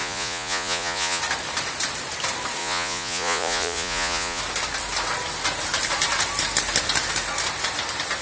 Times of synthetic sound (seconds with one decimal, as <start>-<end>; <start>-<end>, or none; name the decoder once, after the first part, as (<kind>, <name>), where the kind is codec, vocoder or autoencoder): 0.0-1.2 (vocoder, Vocos); 2.6-4.4